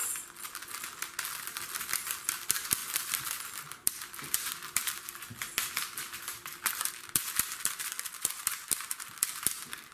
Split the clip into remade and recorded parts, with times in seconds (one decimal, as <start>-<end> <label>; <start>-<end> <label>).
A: 0.0-1.4 recorded; 1.4-9.9 remade